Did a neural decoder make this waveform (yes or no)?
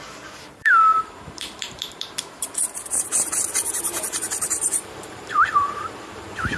yes